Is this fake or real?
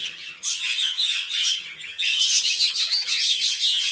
fake